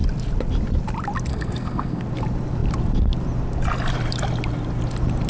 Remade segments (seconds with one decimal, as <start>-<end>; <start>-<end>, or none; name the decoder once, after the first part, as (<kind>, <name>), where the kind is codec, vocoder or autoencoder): 1.3-2.0 (codec, SNAC)